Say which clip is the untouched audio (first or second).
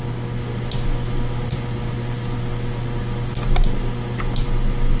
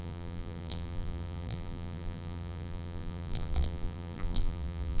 first